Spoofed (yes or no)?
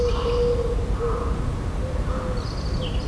no